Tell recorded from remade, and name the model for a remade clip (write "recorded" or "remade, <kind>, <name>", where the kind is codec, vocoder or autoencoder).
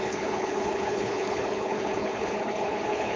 remade, codec, HILCodec